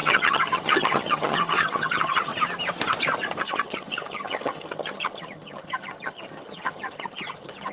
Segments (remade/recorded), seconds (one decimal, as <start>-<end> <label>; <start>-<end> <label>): 0.0-2.3 remade; 2.3-3.4 recorded; 3.4-7.7 remade